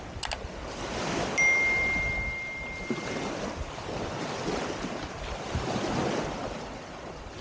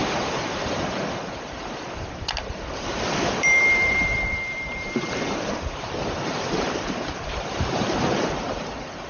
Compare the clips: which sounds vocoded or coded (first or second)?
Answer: second